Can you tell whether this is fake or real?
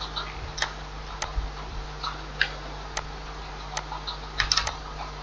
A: real